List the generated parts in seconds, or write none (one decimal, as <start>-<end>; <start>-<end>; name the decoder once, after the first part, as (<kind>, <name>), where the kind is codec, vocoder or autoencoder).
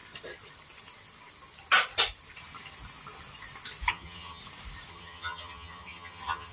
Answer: 3.9-4.4 (vocoder, HiFi-GAN); 4.9-6.5